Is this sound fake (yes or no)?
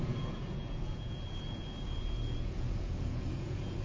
yes